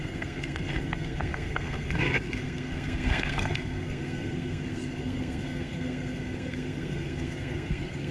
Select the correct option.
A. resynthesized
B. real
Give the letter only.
A